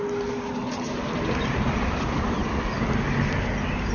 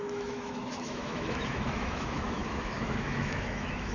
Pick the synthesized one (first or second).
second